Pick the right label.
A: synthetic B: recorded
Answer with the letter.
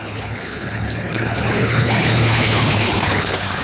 A